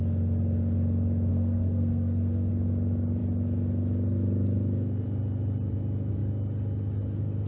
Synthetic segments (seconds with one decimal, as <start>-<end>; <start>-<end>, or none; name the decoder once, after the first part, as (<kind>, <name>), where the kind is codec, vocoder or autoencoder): 1.3-2.5 (codec, SNAC)